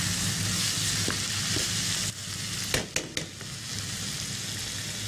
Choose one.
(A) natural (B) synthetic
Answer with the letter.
A